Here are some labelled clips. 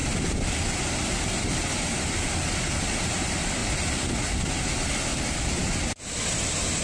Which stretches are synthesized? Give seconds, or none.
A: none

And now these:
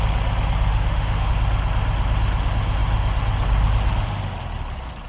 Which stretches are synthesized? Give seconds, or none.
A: 0.7-1.3 (autoencoder, DAC-VAE)

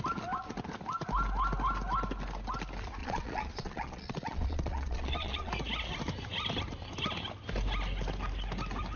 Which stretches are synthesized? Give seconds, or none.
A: 3.0-5.5 (vocoder, Vocos)

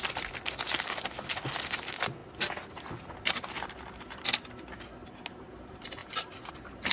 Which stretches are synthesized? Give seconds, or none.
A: none

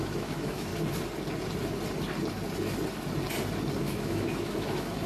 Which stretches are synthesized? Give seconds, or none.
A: 0.0-0.7 (autoencoder, DAC-VAE); 3.8-5.1

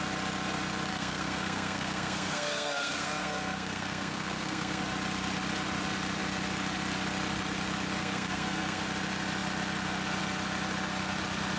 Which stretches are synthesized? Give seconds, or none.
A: 0.9-4.8 (codec, SNAC); 8.0-8.8